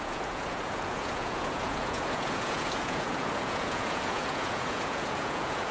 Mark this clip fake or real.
fake